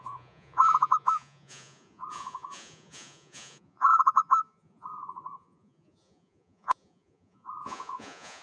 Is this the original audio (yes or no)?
no